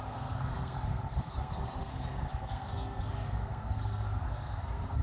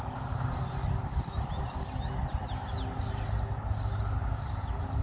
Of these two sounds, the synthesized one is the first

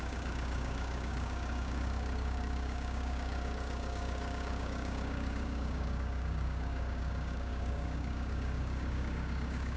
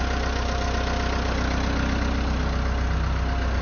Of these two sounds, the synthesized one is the first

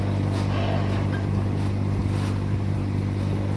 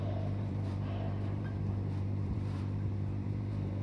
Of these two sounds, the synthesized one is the second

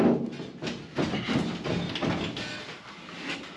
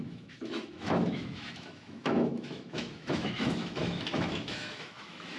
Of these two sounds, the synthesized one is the second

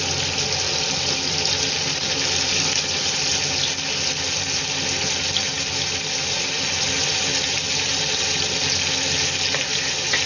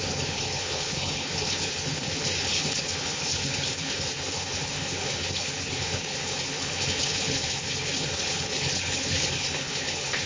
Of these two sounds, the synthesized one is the second